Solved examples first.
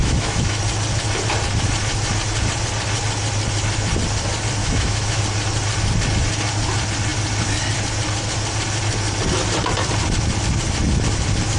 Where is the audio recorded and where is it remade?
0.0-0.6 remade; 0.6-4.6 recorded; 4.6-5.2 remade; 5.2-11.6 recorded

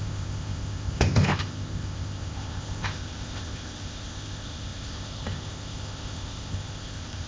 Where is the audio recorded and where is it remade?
0.0-7.3 remade

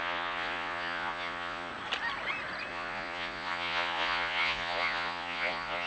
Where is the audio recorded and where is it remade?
0.0-1.7 remade; 1.7-2.7 recorded; 2.7-5.9 remade

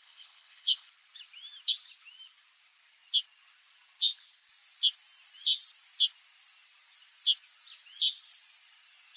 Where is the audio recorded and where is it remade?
0.0-0.9 remade; 0.9-9.2 recorded

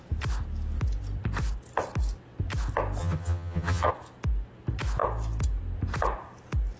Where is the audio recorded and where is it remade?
0.0-3.0 recorded; 3.0-3.9 remade; 3.9-6.8 recorded

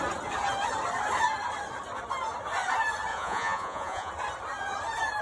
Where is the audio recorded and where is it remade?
0.0-3.1 recorded; 3.1-4.1 remade; 4.1-5.2 recorded